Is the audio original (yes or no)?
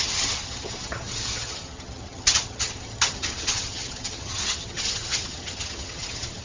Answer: no